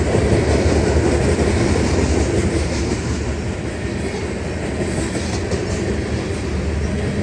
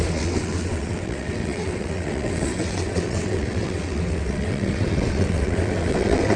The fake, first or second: second